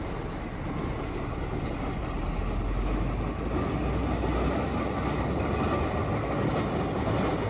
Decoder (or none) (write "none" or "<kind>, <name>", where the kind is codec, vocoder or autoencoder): none